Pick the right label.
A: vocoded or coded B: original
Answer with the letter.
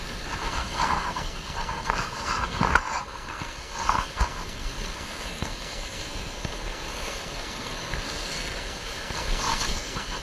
A